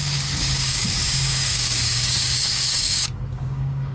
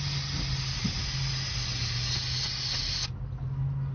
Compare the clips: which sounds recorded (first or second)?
second